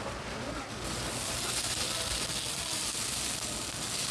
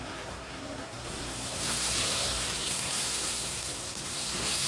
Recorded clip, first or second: first